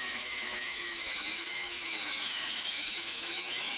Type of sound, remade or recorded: remade